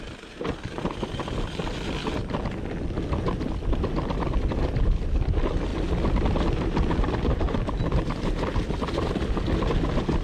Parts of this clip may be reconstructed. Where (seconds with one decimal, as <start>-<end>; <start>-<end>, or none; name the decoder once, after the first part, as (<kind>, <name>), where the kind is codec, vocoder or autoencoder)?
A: none